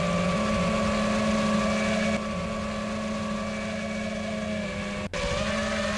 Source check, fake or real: real